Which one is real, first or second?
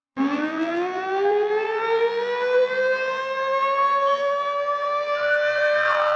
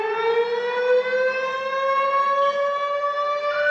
second